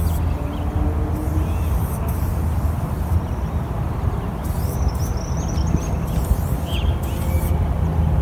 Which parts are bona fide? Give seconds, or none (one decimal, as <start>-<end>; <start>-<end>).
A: 0.0-3.1; 4.8-8.2